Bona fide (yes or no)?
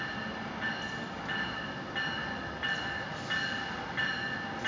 yes